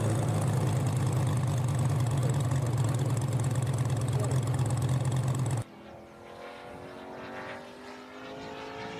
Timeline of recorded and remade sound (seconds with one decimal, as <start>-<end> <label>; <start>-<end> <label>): 0.0-2.2 recorded; 2.2-2.9 remade; 2.9-9.0 recorded